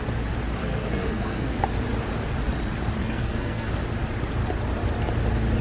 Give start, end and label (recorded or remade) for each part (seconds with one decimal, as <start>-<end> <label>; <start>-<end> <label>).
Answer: 0.0-0.6 recorded; 0.6-1.6 remade; 1.6-3.0 recorded; 3.0-3.7 remade; 3.7-5.6 recorded